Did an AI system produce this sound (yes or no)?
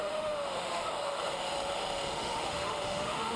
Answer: yes